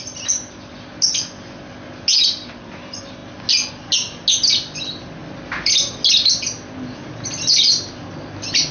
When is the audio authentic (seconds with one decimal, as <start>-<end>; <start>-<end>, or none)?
0.0-8.7